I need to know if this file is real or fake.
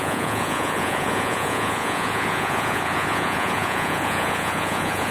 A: fake